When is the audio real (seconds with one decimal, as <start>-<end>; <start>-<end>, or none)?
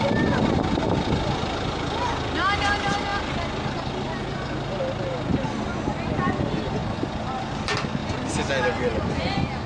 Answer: 0.0-9.7